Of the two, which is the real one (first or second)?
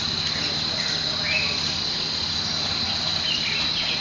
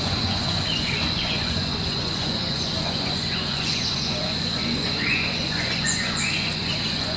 first